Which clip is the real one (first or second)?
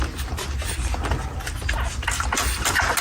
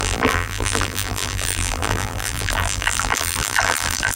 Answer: first